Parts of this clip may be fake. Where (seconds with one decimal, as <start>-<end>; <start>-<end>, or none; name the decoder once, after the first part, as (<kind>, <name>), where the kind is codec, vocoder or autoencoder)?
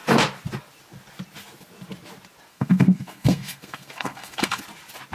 2.5-4.6 (codec, SNAC)